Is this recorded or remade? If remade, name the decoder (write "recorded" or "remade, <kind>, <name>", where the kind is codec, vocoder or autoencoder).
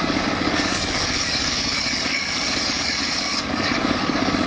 remade, codec, DAC